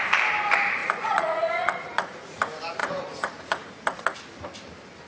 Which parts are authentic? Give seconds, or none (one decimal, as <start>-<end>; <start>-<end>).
0.0-0.8; 2.4-2.8; 3.7-5.1